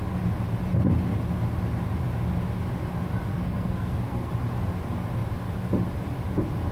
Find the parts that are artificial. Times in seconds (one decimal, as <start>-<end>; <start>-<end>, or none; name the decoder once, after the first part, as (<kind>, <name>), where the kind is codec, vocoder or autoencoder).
3.3-4.3 (codec, SNAC)